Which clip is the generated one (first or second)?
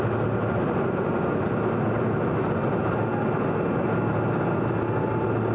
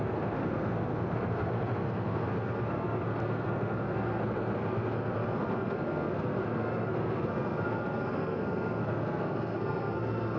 second